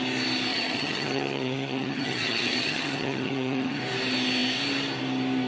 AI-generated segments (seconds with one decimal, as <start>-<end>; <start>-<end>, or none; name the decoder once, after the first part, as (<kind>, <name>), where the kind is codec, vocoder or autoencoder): 0.5-3.8 (vocoder, HiFi-GAN)